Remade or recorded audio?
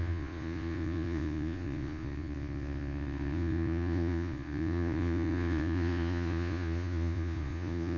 remade